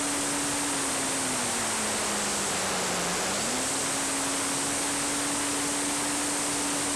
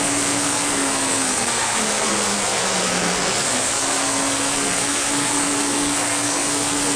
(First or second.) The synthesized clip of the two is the second